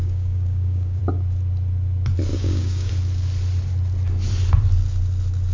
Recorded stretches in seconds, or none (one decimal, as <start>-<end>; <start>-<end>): 1.0-2.3; 2.9-5.5